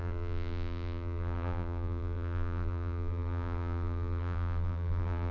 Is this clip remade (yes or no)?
yes